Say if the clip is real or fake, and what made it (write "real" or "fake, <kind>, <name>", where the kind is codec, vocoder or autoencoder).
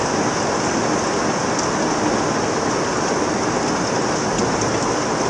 real